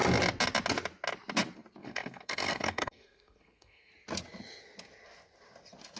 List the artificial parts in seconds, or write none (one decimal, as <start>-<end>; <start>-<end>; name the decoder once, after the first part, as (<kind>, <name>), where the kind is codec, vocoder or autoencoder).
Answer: 1.8-3.9 (codec, SNAC)